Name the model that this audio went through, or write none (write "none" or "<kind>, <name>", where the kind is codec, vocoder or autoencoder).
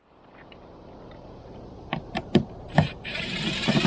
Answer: vocoder, BigVGAN v2